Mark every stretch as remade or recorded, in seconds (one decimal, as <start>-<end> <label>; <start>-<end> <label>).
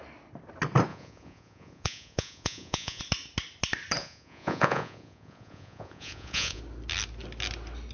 0.0-0.9 recorded; 0.9-3.0 remade; 3.0-4.0 recorded; 4.0-6.6 remade; 6.6-7.9 recorded